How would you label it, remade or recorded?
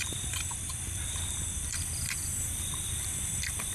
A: remade